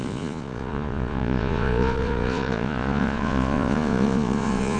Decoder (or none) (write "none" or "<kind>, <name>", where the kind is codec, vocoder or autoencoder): vocoder, Vocos